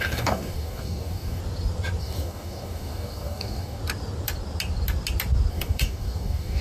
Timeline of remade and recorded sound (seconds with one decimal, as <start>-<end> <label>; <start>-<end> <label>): 0.0-1.4 remade; 1.4-2.0 recorded; 2.0-3.8 remade; 3.8-5.5 recorded; 5.5-6.6 remade